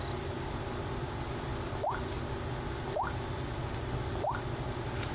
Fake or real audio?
real